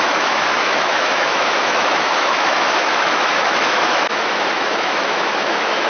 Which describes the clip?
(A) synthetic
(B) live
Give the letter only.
A